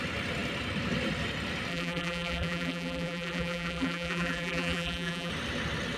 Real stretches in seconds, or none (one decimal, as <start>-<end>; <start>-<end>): 0.0-1.7; 5.3-6.0